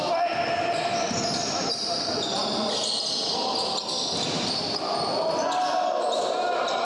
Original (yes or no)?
yes